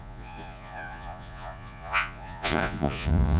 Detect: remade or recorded remade